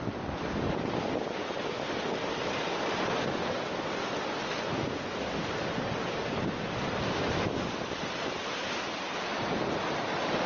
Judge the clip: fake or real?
real